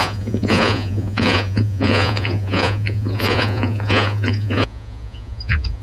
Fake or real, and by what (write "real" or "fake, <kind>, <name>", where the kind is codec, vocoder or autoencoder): fake, vocoder, Vocos